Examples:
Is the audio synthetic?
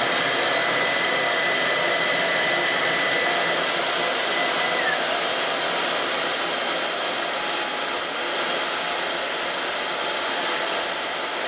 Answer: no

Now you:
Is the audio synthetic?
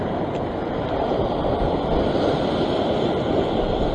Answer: yes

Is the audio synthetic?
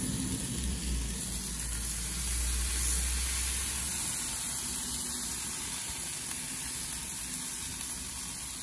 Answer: no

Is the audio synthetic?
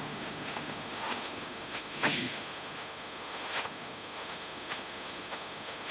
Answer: yes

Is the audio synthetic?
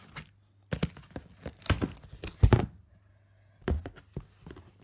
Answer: no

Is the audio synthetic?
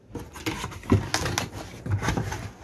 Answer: no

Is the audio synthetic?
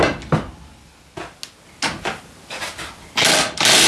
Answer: no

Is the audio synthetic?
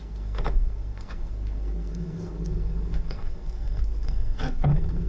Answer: yes